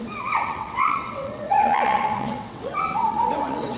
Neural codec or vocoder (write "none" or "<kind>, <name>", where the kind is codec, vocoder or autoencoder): vocoder, WaveNeXt